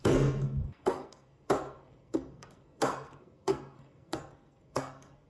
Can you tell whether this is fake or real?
fake